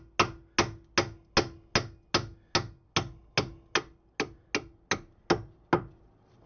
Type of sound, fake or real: real